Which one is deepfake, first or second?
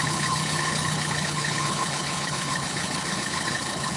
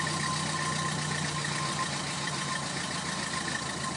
first